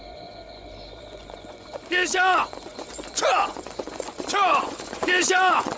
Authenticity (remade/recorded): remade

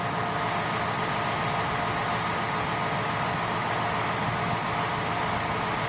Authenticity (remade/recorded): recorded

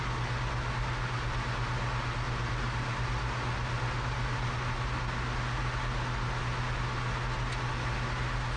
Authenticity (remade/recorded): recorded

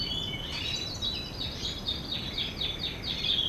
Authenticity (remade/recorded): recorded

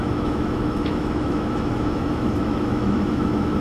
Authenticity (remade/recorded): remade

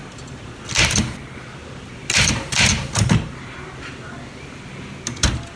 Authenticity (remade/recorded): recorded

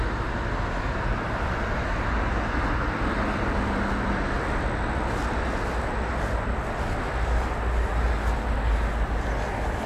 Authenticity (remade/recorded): recorded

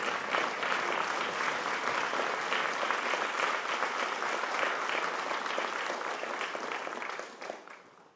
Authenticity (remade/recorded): recorded